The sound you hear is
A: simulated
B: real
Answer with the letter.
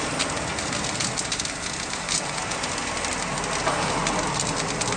B